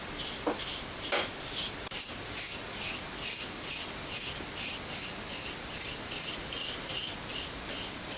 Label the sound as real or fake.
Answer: real